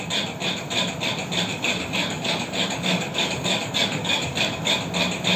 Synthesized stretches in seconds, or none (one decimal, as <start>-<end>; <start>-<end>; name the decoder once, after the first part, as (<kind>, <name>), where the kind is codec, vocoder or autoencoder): 1.5-4.7 (codec, DAC)